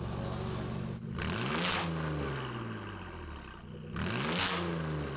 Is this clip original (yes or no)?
yes